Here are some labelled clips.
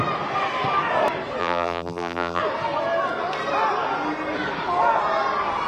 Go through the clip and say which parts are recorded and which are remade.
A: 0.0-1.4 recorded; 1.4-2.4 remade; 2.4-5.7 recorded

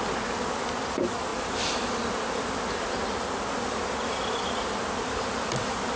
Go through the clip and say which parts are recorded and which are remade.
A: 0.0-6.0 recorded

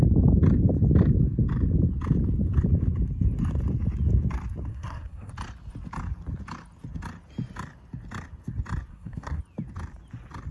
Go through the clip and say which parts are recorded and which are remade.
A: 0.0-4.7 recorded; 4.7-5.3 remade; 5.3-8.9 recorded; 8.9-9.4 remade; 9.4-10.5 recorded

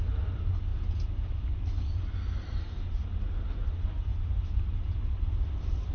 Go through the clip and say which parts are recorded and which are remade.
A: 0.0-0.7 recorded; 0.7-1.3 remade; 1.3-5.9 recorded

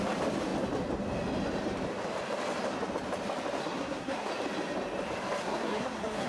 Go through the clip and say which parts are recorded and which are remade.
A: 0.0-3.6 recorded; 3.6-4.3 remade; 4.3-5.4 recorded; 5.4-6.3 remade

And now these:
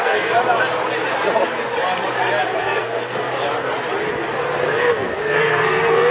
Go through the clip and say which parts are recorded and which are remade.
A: 0.0-0.4 remade; 0.4-2.6 recorded; 2.6-3.2 remade; 3.2-4.6 recorded; 4.6-6.1 remade

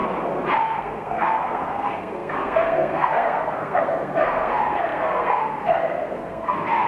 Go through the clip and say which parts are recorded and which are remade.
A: 0.0-0.6 recorded; 0.6-6.9 remade